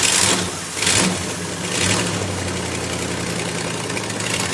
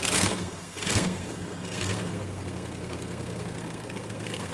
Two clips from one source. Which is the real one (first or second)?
first